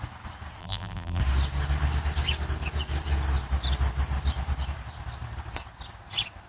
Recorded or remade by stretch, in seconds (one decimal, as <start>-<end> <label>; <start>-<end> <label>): 0.0-0.6 recorded; 0.6-1.2 remade; 1.2-6.5 recorded